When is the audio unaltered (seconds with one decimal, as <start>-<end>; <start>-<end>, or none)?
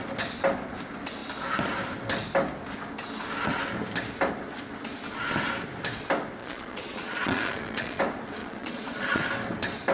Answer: 0.0-6.4; 8.0-8.4; 9.2-9.9